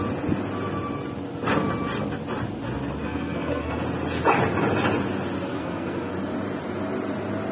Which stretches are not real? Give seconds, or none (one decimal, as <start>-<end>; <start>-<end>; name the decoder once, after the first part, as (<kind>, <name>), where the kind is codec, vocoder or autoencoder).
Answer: 3.0-3.8 (codec, SNAC); 5.5-6.1

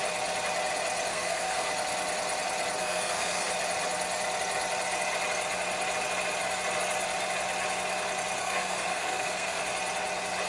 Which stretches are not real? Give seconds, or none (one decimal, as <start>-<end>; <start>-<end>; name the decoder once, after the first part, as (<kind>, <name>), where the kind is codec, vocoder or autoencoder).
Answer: 1.1-1.7 (codec, SNAC); 2.8-3.5; 8.4-9.6

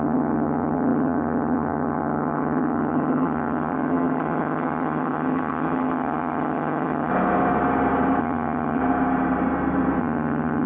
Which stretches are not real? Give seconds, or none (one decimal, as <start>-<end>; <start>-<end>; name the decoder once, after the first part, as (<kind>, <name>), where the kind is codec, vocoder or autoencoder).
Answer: 0.0-7.1 (vocoder, HiFi-GAN); 8.2-8.8; 10.0-10.7

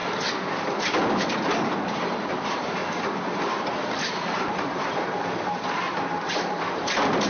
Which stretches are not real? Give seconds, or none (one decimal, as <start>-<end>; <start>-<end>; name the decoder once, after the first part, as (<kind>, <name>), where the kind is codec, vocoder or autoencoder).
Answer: 1.0-2.8 (vocoder, BigVGAN v2); 3.5-5.8; 6.8-7.3

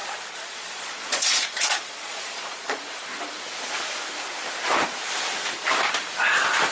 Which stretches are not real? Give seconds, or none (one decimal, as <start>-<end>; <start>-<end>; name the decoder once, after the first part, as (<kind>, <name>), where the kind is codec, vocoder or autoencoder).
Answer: 0.0-3.1 (vocoder, Vocos)

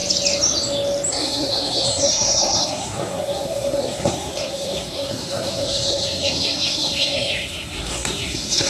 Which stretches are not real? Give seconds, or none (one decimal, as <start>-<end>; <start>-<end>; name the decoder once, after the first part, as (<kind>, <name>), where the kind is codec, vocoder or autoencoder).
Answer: 1.1-8.7 (codec, SNAC)